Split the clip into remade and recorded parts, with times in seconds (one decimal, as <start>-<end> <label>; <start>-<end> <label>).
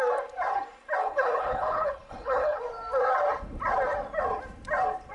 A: 0.0-1.0 recorded; 1.0-2.6 remade; 2.6-5.1 recorded